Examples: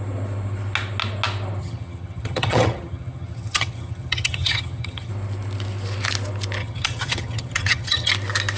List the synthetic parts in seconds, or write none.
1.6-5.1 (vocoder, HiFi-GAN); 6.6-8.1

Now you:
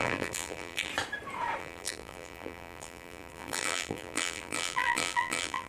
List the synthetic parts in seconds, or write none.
0.0-0.9 (vocoder, BigVGAN v2); 1.6-5.7

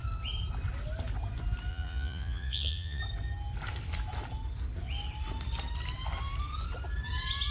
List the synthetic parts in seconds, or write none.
1.7-3.0 (vocoder, Vocos)

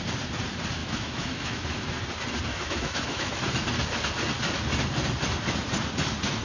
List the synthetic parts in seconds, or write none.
0.8-1.9 (autoencoder, DAC-VAE); 2.5-3.4